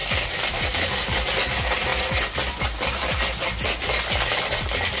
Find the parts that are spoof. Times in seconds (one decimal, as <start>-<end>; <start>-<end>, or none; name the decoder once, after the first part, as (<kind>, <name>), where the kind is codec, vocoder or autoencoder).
none

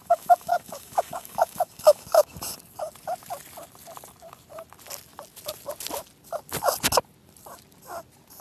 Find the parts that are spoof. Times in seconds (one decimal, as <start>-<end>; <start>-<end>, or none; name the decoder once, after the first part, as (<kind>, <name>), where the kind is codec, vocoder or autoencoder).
0.0-2.4 (codec, DAC)

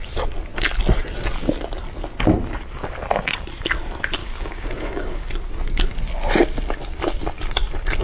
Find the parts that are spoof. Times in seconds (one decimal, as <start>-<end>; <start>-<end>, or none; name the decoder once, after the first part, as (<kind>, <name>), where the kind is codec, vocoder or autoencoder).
4.2-5.3 (codec, DAC)

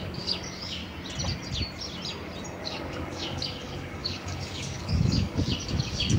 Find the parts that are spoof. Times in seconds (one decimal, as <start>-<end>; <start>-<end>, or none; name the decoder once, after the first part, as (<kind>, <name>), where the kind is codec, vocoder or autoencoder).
0.0-0.8 (codec, DAC); 2.6-6.2